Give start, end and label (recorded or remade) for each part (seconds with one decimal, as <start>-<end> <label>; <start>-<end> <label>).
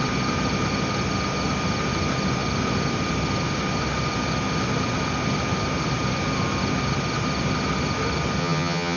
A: 0.0-8.4 recorded; 8.4-9.0 remade